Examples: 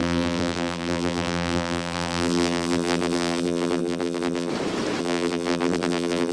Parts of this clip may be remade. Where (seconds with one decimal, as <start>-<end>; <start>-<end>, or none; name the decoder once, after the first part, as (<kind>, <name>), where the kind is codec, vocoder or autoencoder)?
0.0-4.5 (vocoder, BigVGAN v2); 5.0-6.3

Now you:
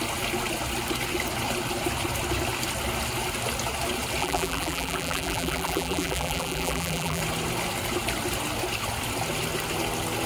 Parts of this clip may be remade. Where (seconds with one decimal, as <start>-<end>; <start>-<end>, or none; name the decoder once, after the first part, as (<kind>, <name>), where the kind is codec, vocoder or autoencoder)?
4.2-7.2 (vocoder, BigVGAN v2)

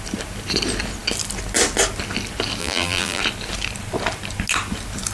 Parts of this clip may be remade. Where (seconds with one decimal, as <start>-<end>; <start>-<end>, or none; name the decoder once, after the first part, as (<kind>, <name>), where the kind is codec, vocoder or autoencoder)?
2.6-3.2 (vocoder, BigVGAN v2)

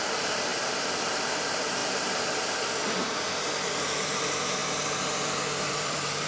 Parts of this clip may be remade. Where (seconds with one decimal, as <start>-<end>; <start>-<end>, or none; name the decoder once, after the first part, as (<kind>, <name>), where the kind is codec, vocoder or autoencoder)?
0.0-0.5 (vocoder, BigVGAN v2); 1.1-4.6; 5.7-6.3

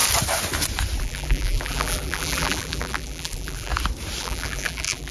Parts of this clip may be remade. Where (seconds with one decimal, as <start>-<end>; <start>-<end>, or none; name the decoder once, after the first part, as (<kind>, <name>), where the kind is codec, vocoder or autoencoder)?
1.0-3.7 (vocoder, BigVGAN v2); 4.2-5.1